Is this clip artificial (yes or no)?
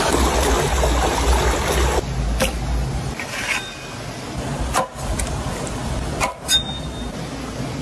no